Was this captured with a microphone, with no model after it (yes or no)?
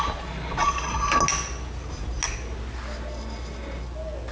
yes